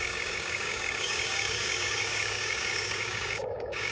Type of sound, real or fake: fake